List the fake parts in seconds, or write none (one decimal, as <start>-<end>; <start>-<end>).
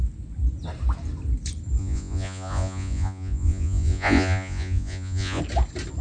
1.8-5.4